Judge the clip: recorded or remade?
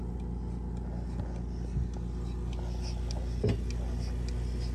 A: recorded